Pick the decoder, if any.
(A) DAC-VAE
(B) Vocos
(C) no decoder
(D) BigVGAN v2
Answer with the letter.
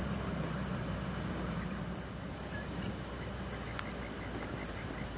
C